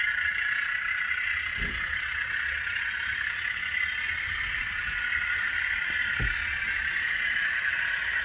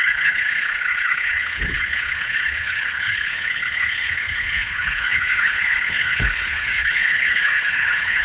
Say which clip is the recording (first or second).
first